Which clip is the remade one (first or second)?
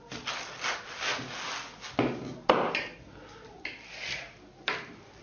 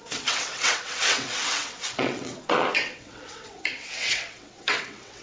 second